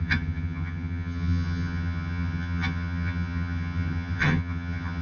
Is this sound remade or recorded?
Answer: remade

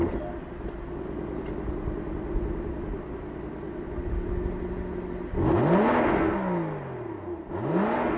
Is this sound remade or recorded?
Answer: recorded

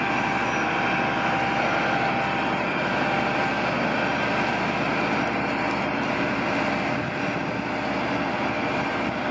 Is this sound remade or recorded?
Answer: recorded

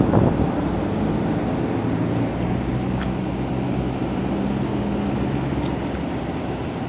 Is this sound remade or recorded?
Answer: recorded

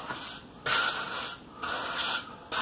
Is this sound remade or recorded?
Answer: recorded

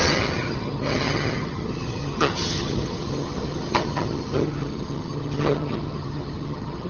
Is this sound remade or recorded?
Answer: remade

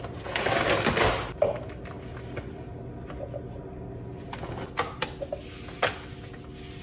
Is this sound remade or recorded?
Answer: recorded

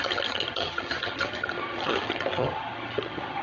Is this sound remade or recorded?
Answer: remade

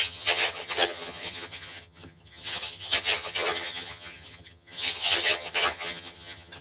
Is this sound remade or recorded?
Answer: remade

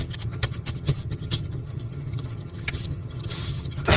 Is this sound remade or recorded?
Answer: remade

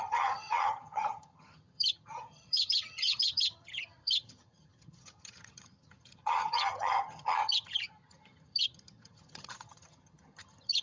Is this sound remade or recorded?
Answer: remade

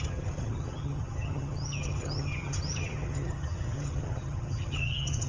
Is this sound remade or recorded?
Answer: remade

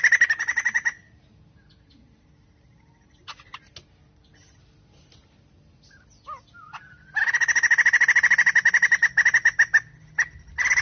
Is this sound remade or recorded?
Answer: recorded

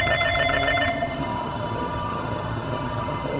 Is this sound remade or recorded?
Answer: remade